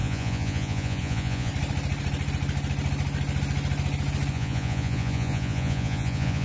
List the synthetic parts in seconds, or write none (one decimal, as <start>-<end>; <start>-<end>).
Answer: 0.0-1.5; 4.3-6.4